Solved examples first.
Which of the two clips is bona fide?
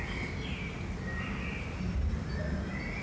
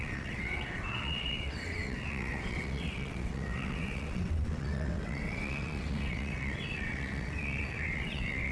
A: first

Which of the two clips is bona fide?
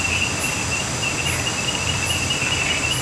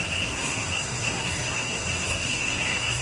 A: first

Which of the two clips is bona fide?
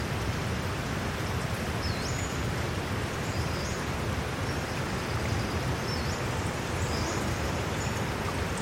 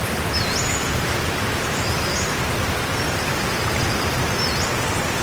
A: second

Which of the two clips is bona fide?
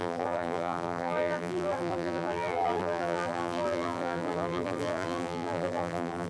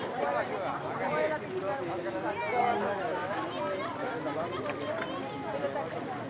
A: second